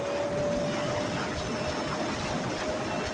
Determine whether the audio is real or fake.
real